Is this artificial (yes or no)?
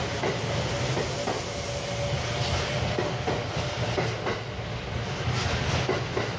no